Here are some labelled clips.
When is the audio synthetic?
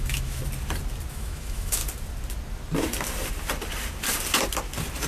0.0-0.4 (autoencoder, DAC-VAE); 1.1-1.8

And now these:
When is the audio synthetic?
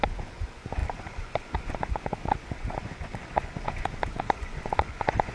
0.0-5.3 (vocoder, Vocos)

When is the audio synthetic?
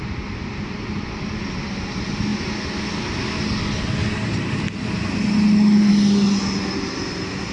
none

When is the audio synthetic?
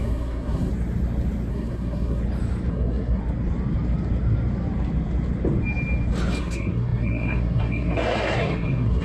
0.0-0.7 (codec, SNAC); 1.5-2.2; 2.7-3.2; 6.4-9.0